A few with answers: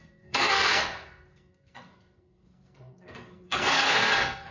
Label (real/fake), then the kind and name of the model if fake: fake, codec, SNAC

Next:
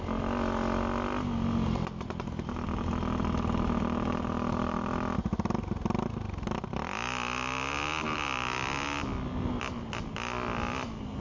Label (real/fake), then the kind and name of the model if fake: real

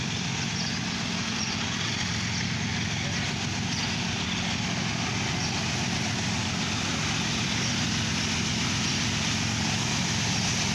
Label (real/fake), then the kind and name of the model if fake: real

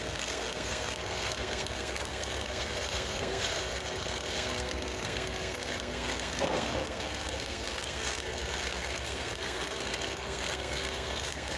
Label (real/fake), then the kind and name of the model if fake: fake, codec, SNAC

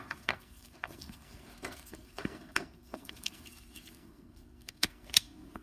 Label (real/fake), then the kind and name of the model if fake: fake, codec, SNAC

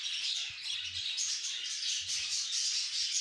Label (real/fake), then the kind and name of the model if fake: real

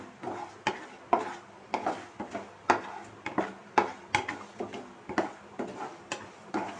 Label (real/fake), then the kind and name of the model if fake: real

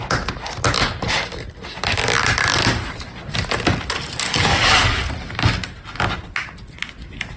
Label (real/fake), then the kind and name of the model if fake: real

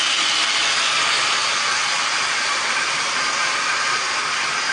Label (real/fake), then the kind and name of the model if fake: real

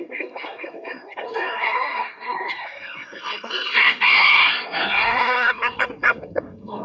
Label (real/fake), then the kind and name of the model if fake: fake, codec, SNAC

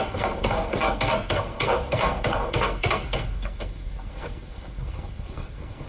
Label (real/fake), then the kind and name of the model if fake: fake, codec, SNAC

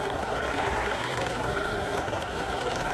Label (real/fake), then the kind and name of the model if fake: fake, codec, SNAC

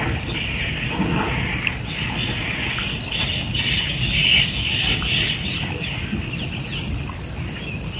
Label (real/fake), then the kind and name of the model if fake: real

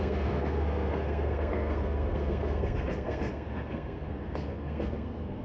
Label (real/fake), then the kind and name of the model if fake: fake, codec, SNAC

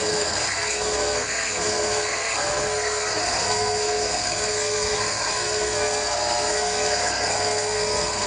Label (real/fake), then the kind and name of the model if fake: fake, codec, SNAC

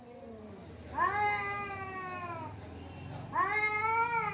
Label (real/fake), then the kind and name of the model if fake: real